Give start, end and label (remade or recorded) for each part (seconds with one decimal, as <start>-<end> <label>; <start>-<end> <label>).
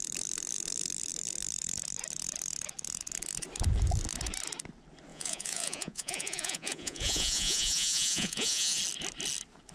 0.0-5.1 recorded; 5.1-8.8 remade; 8.8-9.7 recorded